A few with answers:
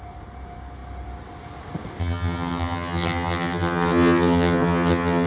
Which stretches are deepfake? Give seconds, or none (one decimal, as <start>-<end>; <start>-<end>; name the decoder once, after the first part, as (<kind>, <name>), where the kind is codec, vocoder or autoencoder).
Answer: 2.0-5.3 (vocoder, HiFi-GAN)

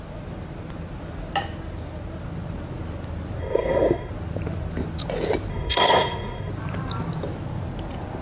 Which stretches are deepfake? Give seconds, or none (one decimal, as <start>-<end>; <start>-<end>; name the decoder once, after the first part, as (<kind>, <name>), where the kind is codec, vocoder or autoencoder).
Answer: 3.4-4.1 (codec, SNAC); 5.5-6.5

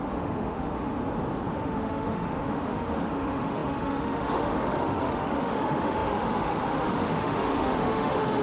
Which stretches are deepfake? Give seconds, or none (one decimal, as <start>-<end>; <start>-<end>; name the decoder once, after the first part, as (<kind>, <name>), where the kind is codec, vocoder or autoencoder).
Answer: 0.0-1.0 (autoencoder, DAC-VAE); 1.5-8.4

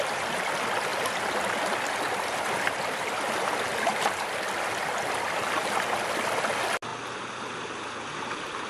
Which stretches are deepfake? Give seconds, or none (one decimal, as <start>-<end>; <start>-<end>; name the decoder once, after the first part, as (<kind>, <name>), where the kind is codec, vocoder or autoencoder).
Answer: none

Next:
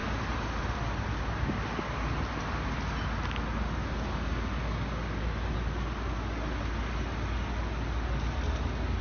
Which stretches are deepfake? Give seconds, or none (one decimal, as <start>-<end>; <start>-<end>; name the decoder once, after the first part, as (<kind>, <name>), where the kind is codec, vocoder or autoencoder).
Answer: none

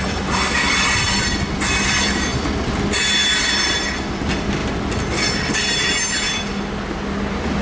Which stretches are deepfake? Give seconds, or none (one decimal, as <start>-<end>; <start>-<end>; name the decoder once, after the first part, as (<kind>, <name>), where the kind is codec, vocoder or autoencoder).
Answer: none